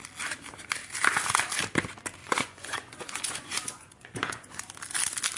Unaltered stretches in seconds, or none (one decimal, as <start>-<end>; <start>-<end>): 0.0-2.2; 4.6-5.4